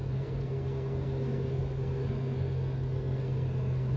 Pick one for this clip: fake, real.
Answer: fake